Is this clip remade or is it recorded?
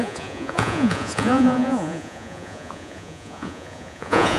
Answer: remade